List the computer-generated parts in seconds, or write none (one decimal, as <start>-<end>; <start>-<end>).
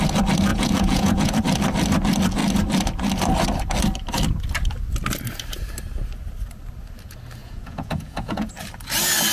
0.5-1.4; 7.4-8.5